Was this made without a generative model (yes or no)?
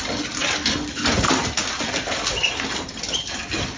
yes